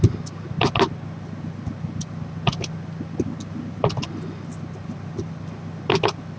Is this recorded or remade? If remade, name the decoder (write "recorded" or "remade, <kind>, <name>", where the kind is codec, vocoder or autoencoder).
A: recorded